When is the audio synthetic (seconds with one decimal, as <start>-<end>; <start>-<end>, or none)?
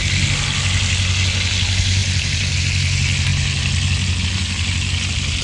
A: none